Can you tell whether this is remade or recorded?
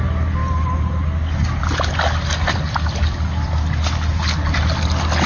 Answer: recorded